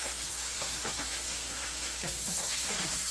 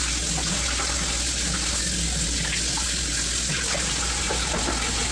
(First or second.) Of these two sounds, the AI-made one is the first